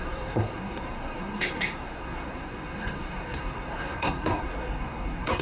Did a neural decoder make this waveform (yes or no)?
yes